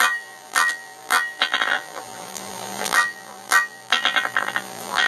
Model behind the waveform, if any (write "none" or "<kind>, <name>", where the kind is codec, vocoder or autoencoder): vocoder, BigVGAN v2